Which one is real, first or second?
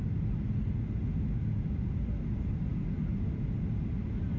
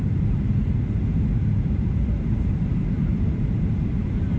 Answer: first